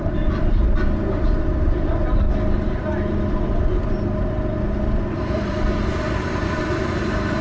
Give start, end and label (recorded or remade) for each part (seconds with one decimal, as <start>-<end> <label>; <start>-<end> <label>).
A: 0.0-2.0 remade; 2.0-4.8 recorded; 4.8-7.4 remade